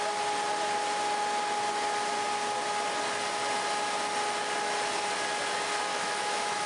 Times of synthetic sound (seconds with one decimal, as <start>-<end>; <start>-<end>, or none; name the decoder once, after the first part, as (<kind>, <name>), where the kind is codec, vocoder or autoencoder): 5.9-6.7 (autoencoder, DAC-VAE)